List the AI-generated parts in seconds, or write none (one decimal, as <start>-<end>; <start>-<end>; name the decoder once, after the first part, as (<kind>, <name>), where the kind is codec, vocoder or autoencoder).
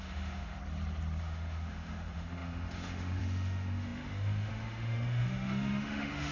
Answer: 0.0-0.6 (autoencoder, DAC-VAE); 1.2-6.3